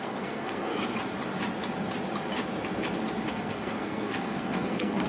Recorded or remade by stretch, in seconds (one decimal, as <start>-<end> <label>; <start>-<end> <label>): 0.0-0.7 remade; 0.7-3.3 recorded; 3.3-5.1 remade